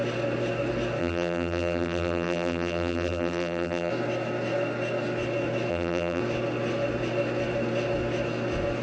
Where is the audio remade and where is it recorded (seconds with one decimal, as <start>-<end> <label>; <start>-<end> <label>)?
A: 0.0-1.0 recorded; 1.0-3.9 remade; 3.9-5.7 recorded; 5.7-6.2 remade; 6.2-8.8 recorded